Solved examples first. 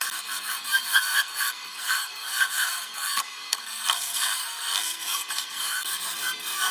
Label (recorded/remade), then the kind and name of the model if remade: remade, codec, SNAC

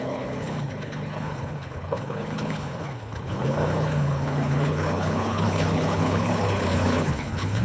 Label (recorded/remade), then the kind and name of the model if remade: remade, codec, HILCodec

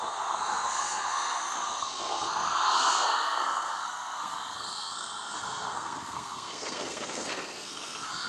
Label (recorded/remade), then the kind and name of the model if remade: remade, codec, SNAC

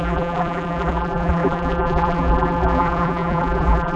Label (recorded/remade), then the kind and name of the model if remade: remade, vocoder, BigVGAN v2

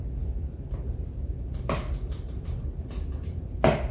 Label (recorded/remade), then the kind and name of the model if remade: recorded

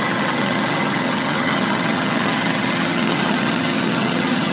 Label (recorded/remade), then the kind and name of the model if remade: remade, vocoder, HiFi-GAN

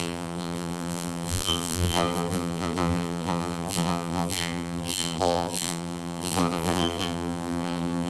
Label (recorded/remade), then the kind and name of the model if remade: remade, vocoder, BigVGAN v2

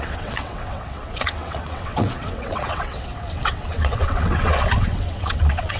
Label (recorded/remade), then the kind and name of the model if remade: remade, vocoder, WaveNeXt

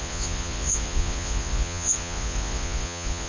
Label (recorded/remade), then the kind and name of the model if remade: remade, vocoder, Vocos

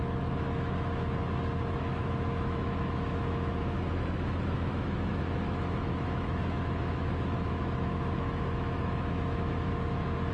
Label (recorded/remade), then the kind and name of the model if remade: remade, autoencoder, DAC-VAE